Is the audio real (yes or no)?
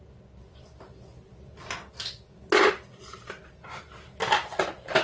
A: yes